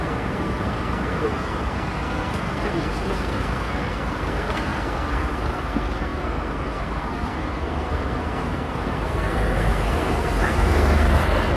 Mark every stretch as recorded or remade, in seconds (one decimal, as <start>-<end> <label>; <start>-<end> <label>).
0.0-11.6 remade